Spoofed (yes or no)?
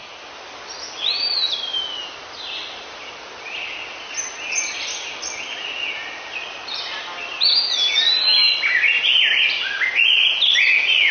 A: no